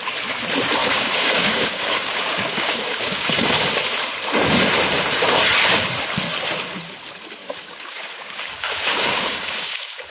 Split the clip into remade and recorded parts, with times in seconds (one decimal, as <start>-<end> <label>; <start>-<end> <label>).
0.0-0.8 recorded; 0.8-3.3 remade; 3.3-7.4 recorded; 7.4-10.1 remade